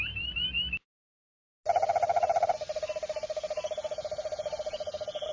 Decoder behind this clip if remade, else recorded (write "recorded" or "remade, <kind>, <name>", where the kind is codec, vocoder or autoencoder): recorded